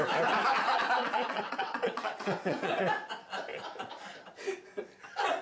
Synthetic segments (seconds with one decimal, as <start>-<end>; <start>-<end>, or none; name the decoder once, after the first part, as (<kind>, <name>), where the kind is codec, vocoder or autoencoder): 1.0-2.7 (vocoder, WaveNeXt)